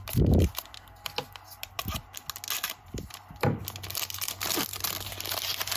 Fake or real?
real